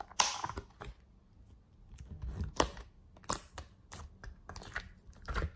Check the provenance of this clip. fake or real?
real